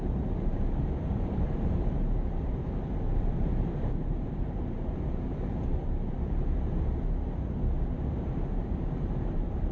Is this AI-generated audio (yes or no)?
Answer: yes